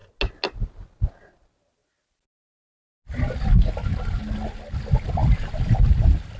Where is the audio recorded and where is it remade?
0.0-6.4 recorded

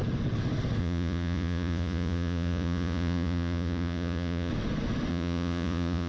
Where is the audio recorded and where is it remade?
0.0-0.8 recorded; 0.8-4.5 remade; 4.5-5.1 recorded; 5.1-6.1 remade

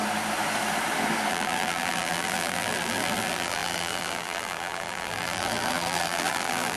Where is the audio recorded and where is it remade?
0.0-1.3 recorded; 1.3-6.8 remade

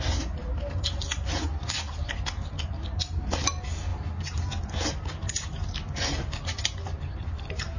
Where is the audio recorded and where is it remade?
0.0-7.8 recorded

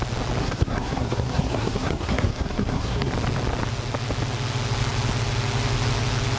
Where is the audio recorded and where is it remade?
0.0-0.4 recorded; 0.4-3.1 remade; 3.1-6.4 recorded